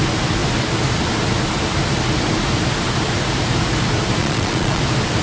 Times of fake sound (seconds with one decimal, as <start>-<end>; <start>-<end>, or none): 4.2-4.8